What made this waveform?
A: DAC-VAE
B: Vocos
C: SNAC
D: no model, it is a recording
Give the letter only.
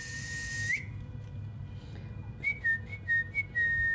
D